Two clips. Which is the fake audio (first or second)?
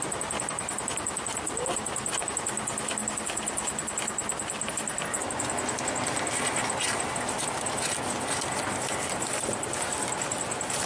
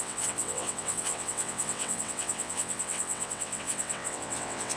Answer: second